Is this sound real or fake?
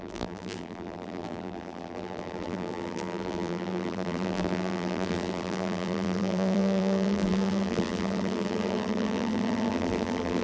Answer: fake